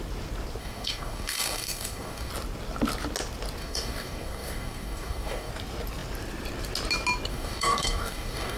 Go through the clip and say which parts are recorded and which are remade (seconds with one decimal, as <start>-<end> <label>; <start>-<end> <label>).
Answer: 0.0-0.6 recorded; 0.6-2.3 remade; 2.3-3.6 recorded; 3.6-5.5 remade; 5.5-7.3 recorded; 7.3-8.6 remade